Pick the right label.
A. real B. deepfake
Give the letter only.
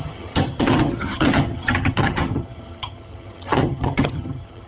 B